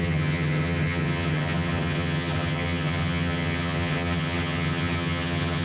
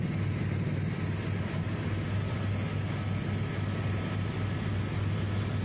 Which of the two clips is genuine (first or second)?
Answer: second